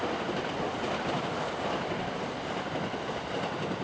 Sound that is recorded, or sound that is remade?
recorded